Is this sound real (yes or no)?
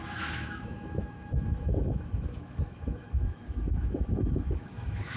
no